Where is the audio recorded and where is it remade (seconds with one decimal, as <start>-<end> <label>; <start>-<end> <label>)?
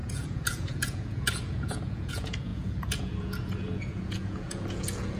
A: 0.0-5.2 remade